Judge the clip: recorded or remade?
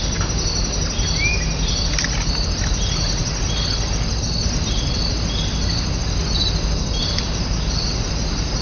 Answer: recorded